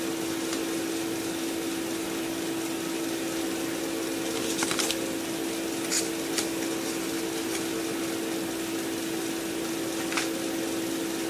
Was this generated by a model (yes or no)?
no